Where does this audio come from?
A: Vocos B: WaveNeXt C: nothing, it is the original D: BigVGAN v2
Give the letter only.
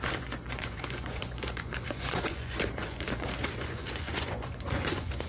A